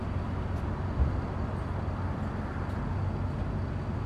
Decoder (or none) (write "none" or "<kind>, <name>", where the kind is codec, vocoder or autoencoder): none